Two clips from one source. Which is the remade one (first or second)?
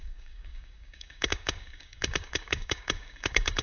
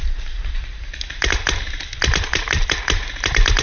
first